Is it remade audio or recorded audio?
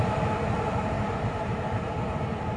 remade